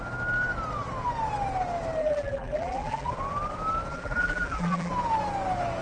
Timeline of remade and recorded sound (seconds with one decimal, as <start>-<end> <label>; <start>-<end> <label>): 0.0-2.0 recorded; 2.0-3.1 remade; 3.1-3.9 recorded; 3.9-4.9 remade; 4.9-5.8 recorded